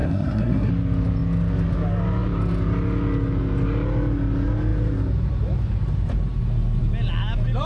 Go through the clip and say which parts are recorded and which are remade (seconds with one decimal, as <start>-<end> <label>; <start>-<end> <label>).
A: 0.0-0.7 remade; 0.7-7.7 recorded